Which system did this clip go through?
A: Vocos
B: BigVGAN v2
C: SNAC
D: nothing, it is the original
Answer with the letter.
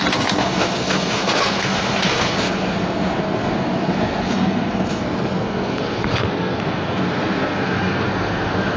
C